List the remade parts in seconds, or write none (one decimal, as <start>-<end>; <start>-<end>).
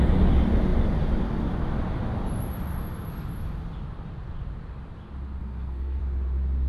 5.4-6.0